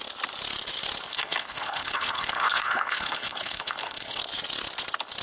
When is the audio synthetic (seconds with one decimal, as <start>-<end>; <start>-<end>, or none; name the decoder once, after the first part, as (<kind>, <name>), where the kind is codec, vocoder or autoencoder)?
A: 1.1-4.2 (codec, HILCodec)